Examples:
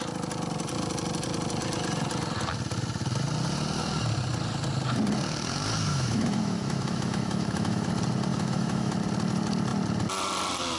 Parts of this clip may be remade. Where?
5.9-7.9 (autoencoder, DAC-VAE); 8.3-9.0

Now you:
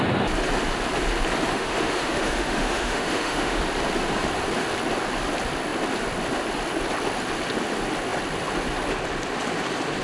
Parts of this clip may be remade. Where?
1.5-3.6 (autoencoder, DAC-VAE)

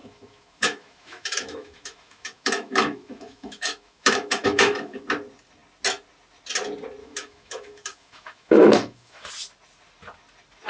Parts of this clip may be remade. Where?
0.0-5.0 (autoencoder, DAC-VAE); 7.0-9.3

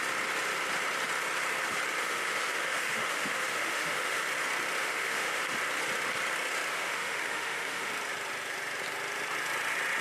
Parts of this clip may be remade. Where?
2.0-4.2 (autoencoder, DAC-VAE); 4.8-5.4; 6.7-7.9